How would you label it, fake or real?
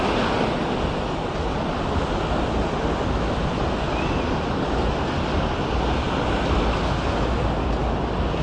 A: real